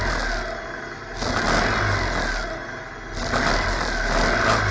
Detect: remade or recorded recorded